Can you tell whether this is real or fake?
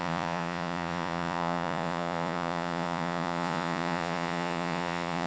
fake